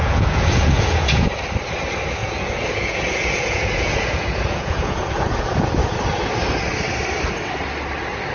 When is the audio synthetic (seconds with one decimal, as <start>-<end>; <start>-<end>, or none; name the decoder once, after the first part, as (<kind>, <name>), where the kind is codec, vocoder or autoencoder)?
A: 0.0-1.2 (vocoder, Vocos); 2.2-6.0